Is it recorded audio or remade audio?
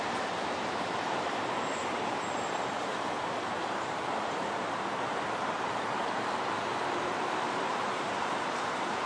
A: remade